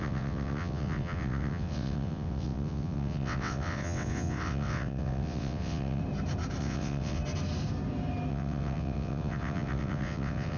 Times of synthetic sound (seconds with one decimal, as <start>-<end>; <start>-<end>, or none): 0.0-6.0; 6.6-7.2; 8.3-10.6